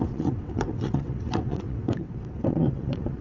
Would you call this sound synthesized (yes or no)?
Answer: yes